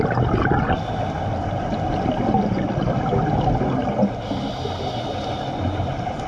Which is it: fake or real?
real